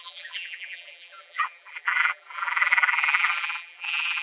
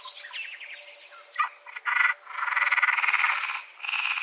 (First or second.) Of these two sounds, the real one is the second